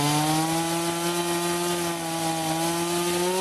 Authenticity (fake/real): real